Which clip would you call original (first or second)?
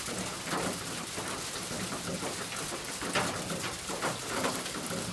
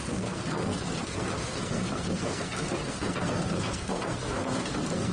first